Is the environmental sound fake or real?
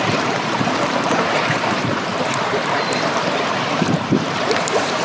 fake